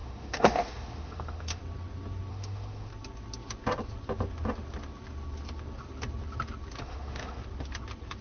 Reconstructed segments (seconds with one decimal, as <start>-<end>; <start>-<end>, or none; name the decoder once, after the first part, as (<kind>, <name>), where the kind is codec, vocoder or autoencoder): 0.0-1.6 (autoencoder, DAC-VAE); 2.3-2.9; 6.8-7.4